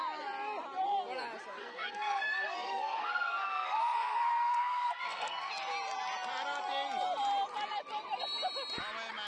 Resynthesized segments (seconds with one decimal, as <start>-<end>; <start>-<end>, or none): 1.6-5.5